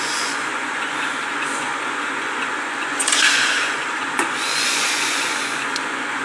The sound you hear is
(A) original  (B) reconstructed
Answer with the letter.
B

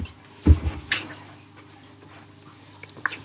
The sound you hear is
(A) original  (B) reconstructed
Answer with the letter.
A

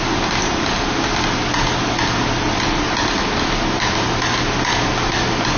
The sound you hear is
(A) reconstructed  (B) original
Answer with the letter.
B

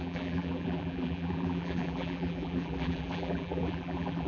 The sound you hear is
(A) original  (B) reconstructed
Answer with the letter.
B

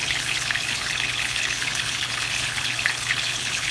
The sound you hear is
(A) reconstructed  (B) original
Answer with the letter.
A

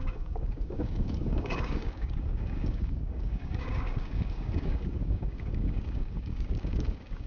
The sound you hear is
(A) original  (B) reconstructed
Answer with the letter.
B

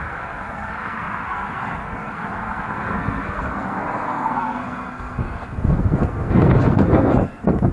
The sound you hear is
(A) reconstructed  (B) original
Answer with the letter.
A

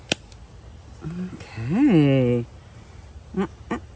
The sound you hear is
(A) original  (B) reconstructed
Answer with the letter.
A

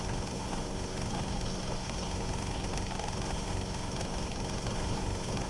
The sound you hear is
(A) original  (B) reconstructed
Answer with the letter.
B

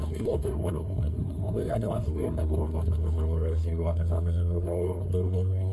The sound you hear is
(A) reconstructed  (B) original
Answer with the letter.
A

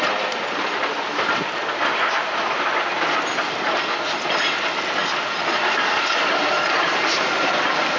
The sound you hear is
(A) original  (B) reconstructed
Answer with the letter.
A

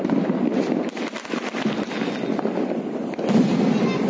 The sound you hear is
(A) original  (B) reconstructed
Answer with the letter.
A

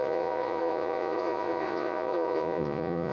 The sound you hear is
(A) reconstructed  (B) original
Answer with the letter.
A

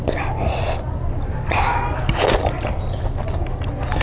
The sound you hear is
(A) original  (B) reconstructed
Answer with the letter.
A